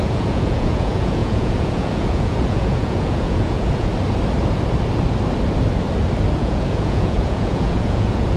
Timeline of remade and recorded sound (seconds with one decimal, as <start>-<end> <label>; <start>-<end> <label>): 0.0-3.9 remade; 3.9-6.3 recorded; 6.3-8.4 remade